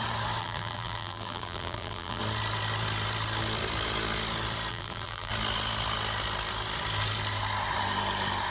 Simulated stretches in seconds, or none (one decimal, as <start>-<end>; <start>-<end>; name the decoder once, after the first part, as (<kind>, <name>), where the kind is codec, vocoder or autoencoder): 0.4-2.2 (vocoder, BigVGAN v2); 4.7-5.3